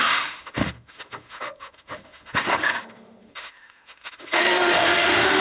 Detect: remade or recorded remade